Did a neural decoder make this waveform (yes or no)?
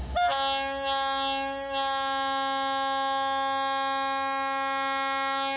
no